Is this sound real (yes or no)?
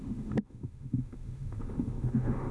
no